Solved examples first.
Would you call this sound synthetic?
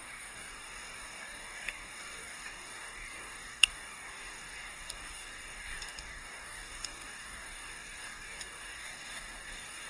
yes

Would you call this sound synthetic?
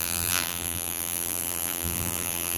yes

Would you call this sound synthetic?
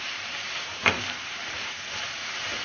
yes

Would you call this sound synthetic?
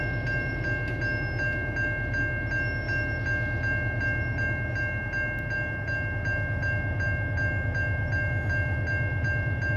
no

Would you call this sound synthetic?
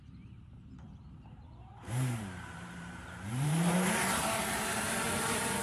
yes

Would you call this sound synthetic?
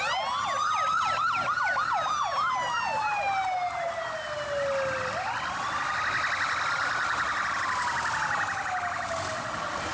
no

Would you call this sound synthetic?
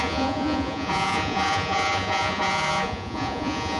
yes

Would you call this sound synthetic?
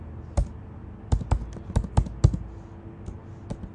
no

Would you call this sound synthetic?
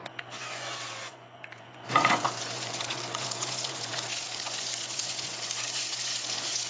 yes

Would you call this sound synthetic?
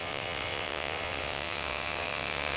yes